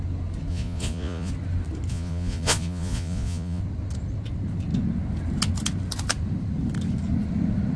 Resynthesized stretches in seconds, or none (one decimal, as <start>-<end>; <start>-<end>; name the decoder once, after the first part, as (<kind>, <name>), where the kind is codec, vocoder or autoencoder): 0.5-1.3 (vocoder, Vocos); 1.9-3.6